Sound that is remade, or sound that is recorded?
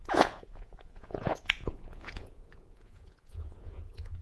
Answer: remade